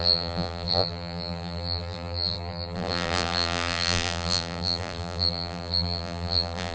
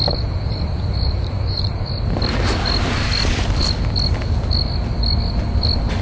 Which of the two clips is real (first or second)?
second